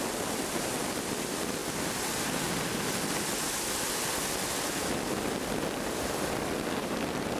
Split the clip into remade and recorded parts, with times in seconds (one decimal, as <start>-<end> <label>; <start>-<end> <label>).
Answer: 0.0-7.4 recorded